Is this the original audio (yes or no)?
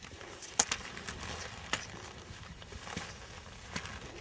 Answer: yes